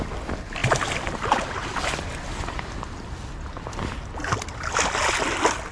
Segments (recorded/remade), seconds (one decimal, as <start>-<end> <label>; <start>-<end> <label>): 0.0-5.7 recorded